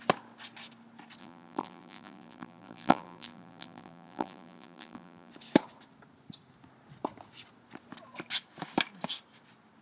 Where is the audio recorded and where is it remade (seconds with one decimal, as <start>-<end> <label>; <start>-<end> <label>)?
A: 0.0-1.2 recorded; 1.2-5.3 remade; 5.3-9.8 recorded